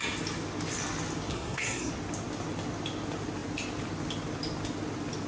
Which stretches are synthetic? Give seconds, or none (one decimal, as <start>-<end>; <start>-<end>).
1.3-1.9